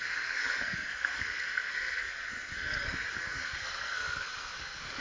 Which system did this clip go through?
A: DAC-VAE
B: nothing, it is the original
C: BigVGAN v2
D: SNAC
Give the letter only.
D